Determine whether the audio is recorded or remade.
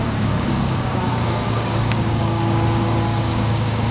remade